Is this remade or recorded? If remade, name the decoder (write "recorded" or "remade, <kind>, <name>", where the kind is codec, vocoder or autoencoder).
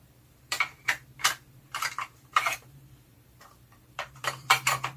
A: remade, vocoder, BigVGAN v2